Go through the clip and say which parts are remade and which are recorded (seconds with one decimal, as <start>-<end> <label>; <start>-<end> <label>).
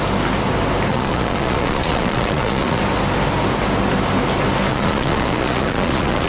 0.0-0.9 recorded; 0.9-2.8 remade; 2.8-4.7 recorded; 4.7-6.3 remade